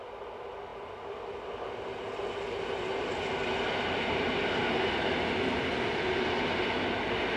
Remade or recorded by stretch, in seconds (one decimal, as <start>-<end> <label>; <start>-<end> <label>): 0.0-7.4 recorded

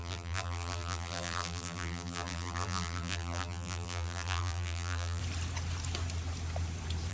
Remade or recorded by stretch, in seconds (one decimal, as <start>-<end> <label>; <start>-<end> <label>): 0.0-5.2 remade; 5.2-7.1 recorded